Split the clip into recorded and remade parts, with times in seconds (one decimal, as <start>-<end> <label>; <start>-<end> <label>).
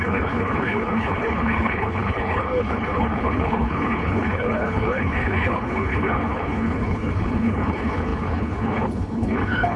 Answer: 0.0-9.8 remade